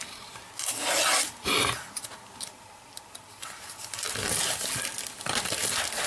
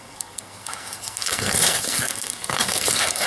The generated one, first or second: second